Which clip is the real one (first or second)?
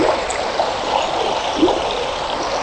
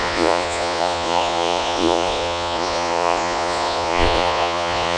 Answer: first